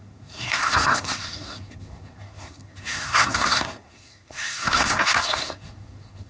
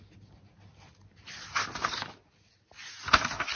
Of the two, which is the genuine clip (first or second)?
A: second